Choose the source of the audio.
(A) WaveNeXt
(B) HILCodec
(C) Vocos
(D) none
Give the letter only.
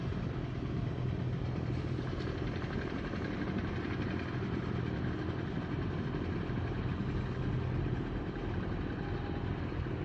D